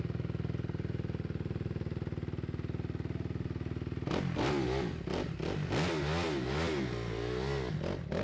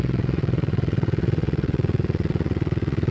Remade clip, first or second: second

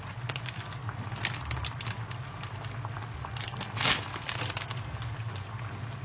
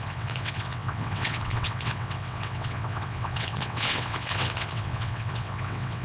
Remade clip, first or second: second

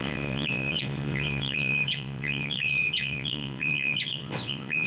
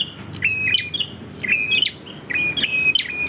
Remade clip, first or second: first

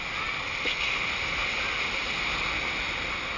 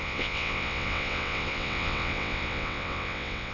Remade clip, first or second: second